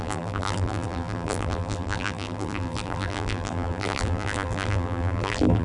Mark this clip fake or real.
fake